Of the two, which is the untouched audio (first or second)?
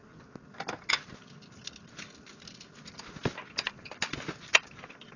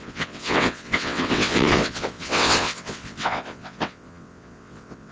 first